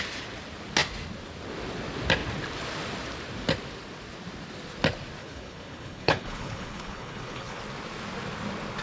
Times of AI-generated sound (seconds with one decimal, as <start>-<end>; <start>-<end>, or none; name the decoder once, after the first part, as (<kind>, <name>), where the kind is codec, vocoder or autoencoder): 5.2-7.6 (codec, HILCodec)